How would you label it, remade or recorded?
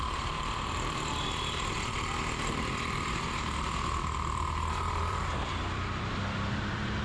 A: remade